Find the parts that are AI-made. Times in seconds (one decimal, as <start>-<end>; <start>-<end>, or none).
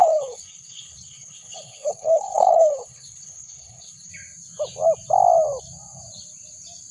0.0-4.1